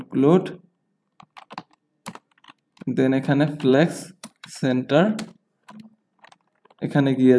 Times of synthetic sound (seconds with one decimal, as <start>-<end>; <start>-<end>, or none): 3.7-5.1